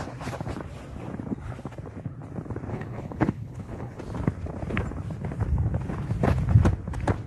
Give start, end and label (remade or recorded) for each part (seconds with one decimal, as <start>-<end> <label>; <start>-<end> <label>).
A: 0.0-2.7 recorded; 2.7-4.0 remade; 4.0-7.3 recorded